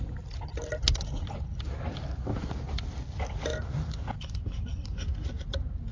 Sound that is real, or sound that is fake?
real